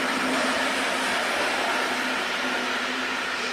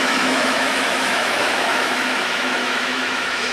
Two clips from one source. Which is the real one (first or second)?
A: first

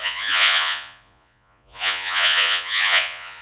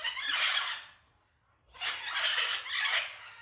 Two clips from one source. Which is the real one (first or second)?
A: second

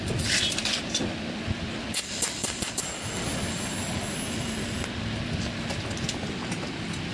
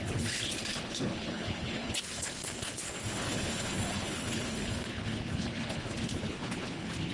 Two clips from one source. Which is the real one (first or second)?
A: first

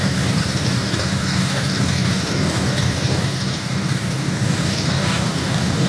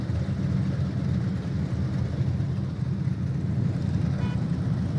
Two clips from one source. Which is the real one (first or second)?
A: second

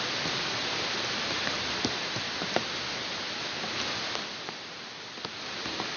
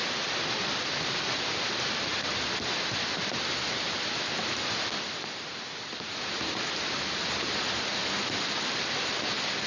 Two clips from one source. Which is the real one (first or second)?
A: first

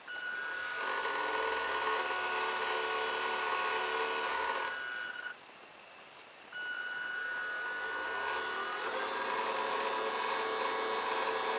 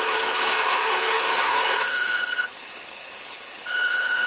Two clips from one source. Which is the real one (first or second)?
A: first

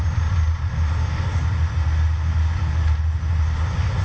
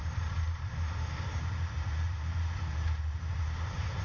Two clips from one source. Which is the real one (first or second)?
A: first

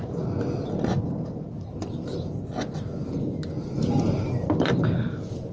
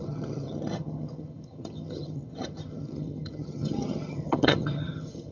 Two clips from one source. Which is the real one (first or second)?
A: first